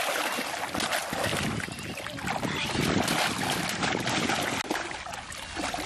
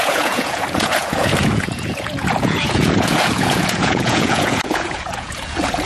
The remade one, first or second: second